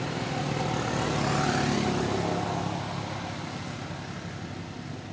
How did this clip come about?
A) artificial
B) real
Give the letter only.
B